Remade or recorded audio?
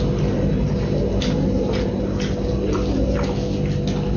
recorded